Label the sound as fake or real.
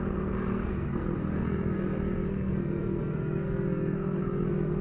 fake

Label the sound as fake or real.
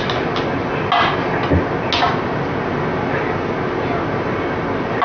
real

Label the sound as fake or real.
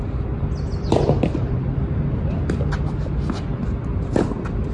real